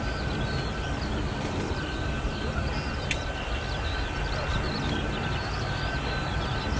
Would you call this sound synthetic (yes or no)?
no